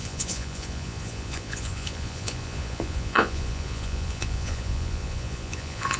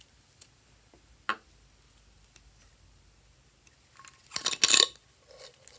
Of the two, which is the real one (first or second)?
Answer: second